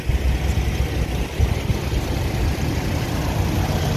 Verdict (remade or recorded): recorded